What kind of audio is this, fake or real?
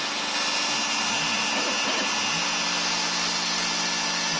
real